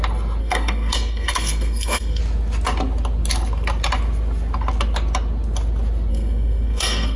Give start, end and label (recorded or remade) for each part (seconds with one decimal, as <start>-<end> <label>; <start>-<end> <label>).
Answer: 0.0-0.4 recorded; 0.4-2.2 remade; 2.2-6.1 recorded; 6.1-7.2 remade